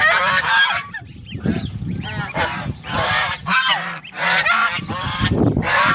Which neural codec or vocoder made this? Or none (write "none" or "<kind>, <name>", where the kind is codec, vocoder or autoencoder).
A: vocoder, BigVGAN v2